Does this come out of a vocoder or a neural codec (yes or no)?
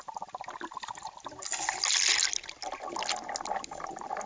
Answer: no